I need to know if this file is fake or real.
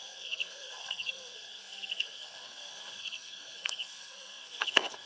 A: fake